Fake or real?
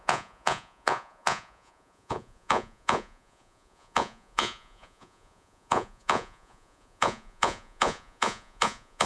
fake